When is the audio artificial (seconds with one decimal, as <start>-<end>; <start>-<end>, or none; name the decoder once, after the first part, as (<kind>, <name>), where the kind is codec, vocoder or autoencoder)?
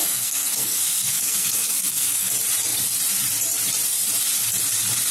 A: 0.0-2.3 (codec, SNAC)